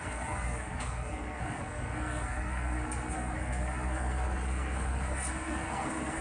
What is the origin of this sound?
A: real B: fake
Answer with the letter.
B